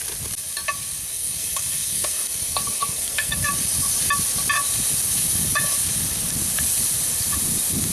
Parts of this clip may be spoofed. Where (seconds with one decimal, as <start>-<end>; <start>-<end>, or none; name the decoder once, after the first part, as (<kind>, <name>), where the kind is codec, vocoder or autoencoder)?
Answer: 1.1-3.5 (codec, SNAC)